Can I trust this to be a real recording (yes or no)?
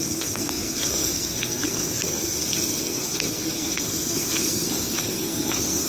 no